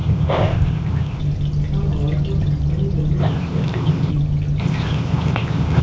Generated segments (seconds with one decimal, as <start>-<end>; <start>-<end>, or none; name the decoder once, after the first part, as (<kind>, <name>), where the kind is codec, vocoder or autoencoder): 0.0-1.2 (codec, ZipCodec); 3.2-4.1; 4.6-5.8